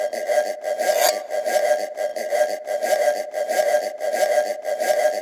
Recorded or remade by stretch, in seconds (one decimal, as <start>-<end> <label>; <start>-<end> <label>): 0.0-2.1 recorded; 2.1-4.1 remade; 4.1-4.5 recorded; 4.5-5.2 remade